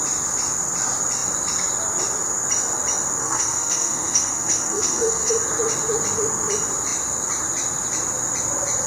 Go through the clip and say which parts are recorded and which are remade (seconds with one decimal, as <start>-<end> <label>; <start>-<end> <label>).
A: 0.0-3.2 recorded; 3.2-5.3 remade; 5.3-8.9 recorded